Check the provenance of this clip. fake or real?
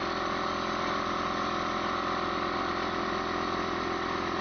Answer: real